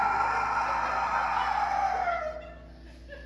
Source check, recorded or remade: recorded